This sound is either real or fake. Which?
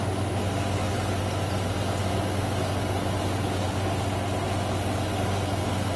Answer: real